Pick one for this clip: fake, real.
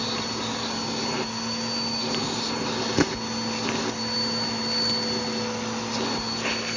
real